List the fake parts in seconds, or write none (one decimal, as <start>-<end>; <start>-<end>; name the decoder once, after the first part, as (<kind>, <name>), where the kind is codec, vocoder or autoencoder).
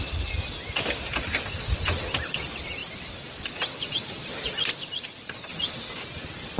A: 2.8-3.9 (vocoder, BigVGAN v2); 4.7-5.5